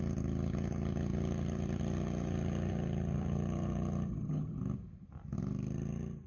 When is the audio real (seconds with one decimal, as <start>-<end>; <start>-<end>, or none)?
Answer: 0.0-4.1; 4.6-6.3